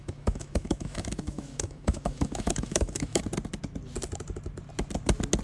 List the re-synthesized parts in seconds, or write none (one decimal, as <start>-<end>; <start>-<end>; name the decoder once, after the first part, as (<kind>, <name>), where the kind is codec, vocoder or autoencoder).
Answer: 0.0-3.2 (autoencoder, DAC-VAE)